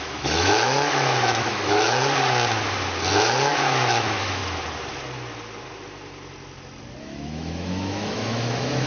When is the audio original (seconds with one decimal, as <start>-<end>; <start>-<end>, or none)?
2.0-3.5; 4.4-7.0